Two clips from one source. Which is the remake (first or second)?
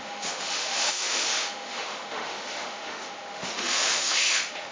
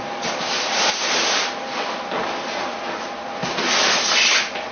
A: first